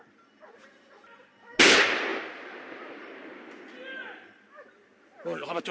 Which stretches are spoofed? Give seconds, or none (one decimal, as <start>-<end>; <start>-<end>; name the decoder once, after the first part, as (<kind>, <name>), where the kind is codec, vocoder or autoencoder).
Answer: none